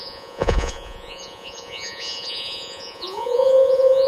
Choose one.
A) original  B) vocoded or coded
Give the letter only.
B